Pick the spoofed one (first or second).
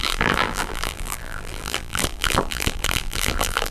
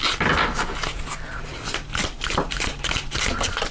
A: first